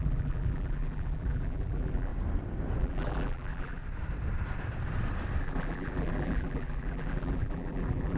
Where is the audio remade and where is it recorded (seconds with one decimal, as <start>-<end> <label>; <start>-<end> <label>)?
0.0-2.1 remade; 2.1-2.8 recorded; 2.8-3.8 remade; 3.8-5.4 recorded; 5.4-8.2 remade